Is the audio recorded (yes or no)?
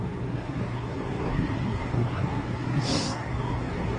no